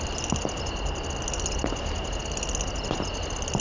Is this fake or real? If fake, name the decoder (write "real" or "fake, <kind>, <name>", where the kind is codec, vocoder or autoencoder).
real